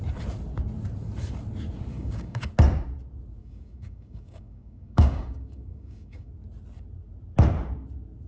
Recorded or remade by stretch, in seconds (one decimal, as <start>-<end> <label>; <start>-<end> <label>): 0.0-1.9 recorded; 1.9-2.5 remade; 2.5-3.4 recorded; 3.4-6.3 remade; 6.3-8.3 recorded